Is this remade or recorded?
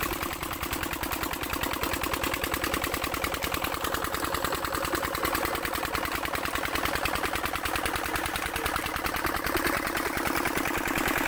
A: recorded